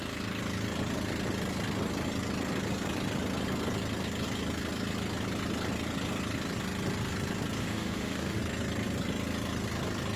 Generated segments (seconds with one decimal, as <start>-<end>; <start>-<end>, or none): 7.6-8.4